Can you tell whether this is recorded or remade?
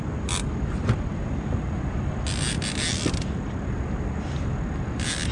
recorded